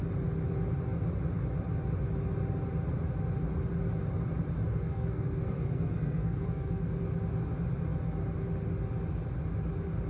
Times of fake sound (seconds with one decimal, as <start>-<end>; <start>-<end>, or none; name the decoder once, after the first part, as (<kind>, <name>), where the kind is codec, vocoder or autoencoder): 4.7-6.9 (codec, SNAC)